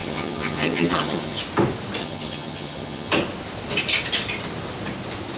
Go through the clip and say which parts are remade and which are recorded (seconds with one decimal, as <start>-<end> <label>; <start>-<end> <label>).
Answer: 0.0-1.4 remade; 1.4-2.0 recorded; 2.0-3.1 remade; 3.1-5.4 recorded